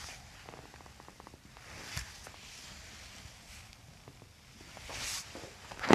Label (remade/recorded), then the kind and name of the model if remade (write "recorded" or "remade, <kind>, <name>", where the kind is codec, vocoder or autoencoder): recorded